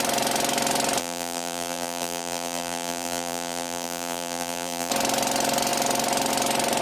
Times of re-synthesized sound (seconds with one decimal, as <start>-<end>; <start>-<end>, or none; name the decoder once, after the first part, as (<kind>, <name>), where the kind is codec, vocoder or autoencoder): 1.0-4.9 (vocoder, BigVGAN v2)